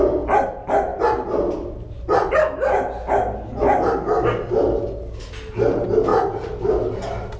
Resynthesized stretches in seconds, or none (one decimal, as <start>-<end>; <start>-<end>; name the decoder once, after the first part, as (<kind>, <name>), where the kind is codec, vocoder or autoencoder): none